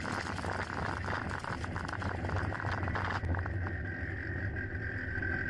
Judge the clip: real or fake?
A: real